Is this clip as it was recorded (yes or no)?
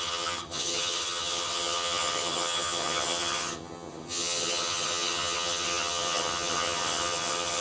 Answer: no